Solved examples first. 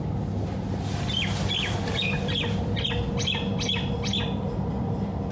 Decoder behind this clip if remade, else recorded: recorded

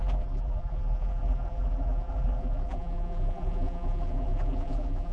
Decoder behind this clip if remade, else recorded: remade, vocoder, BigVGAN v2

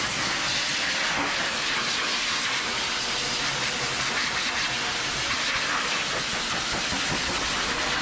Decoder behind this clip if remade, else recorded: recorded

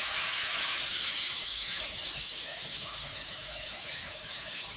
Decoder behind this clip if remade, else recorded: remade, autoencoder, DAC-VAE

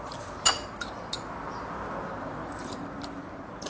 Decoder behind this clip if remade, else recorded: recorded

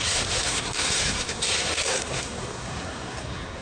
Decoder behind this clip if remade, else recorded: remade, codec, SNAC